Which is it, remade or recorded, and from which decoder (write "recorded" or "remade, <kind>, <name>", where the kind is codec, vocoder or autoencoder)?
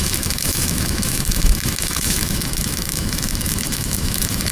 remade, autoencoder, DAC-VAE